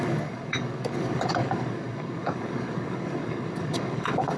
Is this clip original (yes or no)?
no